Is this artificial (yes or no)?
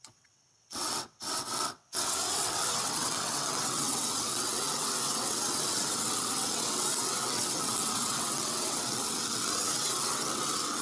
yes